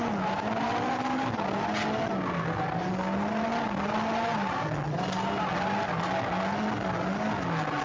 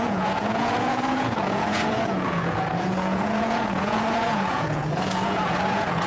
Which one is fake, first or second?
second